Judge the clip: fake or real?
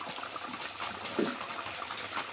real